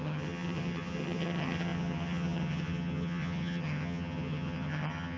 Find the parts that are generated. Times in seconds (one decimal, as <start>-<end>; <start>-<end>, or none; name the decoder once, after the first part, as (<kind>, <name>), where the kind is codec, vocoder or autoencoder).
0.0-5.2 (vocoder, HiFi-GAN)

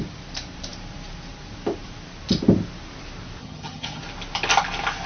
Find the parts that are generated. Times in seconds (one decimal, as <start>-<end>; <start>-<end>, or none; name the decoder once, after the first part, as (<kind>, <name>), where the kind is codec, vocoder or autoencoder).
3.4-4.0 (vocoder, HiFi-GAN)

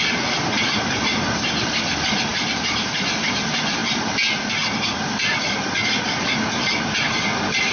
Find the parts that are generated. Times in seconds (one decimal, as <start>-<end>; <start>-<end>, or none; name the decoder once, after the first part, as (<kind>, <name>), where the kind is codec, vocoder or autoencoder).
none

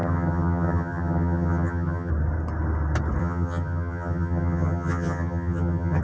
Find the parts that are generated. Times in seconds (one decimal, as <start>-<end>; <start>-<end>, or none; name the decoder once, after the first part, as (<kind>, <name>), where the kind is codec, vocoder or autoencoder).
0.0-2.1 (vocoder, HiFi-GAN); 3.2-6.0